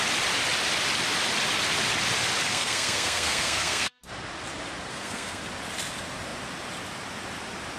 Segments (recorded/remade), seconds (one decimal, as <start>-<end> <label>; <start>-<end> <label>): 0.0-2.5 recorded; 2.5-4.0 remade; 4.0-4.9 recorded; 4.9-5.4 remade; 5.4-7.8 recorded